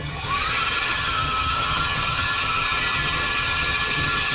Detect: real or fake fake